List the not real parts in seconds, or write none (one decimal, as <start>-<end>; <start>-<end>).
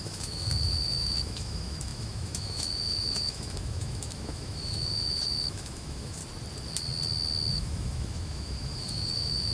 0.0-6.2; 7.5-9.5